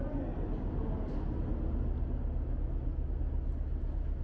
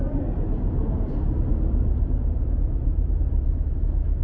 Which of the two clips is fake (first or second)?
second